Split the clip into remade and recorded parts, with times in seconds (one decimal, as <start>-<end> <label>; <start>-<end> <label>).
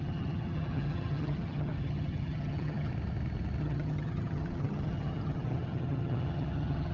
0.0-2.9 remade; 2.9-3.6 recorded; 3.6-6.9 remade